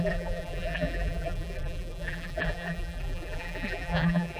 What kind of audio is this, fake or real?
fake